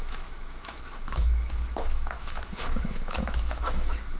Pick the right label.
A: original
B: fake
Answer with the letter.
B